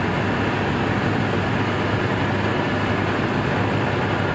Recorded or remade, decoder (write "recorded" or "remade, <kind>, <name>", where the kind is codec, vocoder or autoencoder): recorded